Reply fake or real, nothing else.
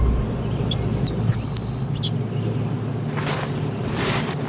real